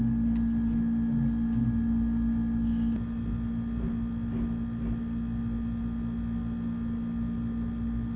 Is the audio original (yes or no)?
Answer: yes